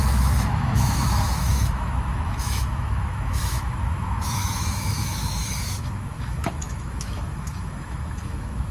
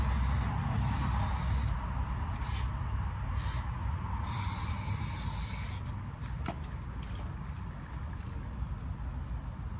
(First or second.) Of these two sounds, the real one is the second